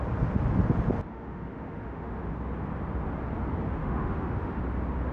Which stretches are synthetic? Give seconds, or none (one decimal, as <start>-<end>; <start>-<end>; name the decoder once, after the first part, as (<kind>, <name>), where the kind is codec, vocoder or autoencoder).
1.1-2.3 (autoencoder, DAC-VAE); 3.8-4.6